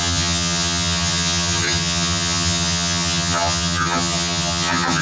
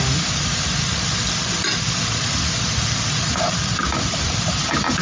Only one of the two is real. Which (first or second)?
second